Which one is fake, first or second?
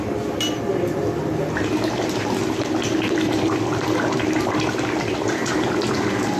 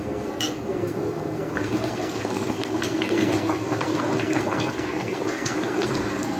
second